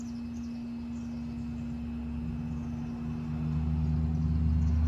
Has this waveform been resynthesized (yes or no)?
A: no